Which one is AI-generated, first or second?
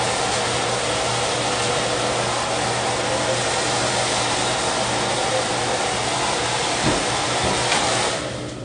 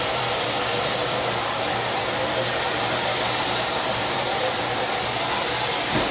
second